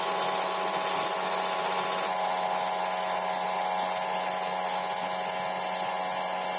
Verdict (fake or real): real